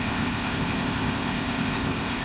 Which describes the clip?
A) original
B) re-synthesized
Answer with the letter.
B